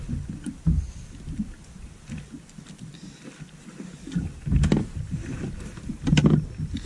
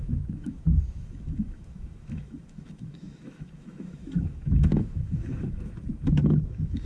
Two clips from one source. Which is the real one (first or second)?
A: first